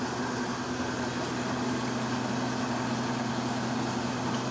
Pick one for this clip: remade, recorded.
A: recorded